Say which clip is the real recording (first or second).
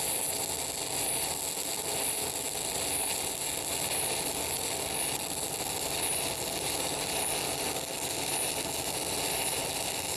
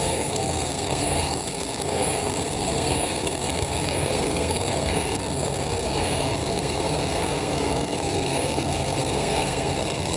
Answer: first